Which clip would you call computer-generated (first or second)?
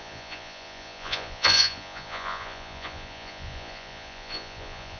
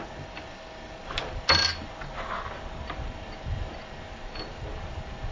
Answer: first